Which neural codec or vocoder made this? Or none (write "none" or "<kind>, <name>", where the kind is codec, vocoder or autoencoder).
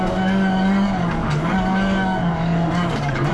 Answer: codec, DAC